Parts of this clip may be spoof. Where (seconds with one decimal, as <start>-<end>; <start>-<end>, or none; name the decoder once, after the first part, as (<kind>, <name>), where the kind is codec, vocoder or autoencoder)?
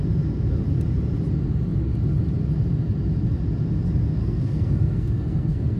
4.2-5.8 (codec, SNAC)